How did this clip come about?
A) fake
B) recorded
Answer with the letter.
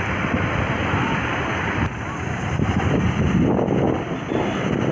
B